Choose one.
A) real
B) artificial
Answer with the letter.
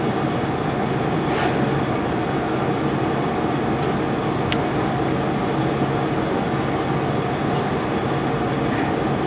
A